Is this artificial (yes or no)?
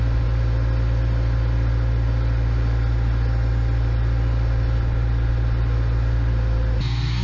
no